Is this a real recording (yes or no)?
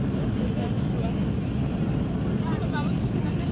yes